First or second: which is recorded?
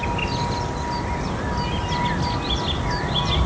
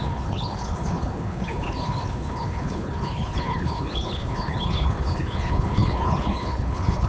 first